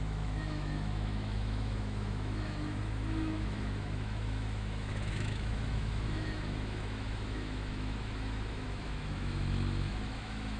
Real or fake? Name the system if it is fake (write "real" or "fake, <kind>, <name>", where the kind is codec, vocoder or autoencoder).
fake, autoencoder, DAC-VAE